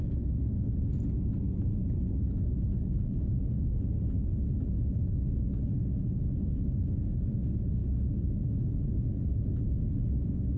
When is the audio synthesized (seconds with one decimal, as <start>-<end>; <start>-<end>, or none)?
none